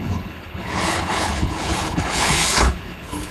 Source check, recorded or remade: remade